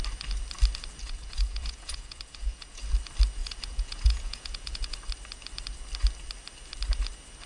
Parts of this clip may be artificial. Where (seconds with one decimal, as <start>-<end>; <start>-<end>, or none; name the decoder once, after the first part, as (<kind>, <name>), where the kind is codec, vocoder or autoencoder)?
1.0-2.8 (vocoder, Vocos); 3.4-5.0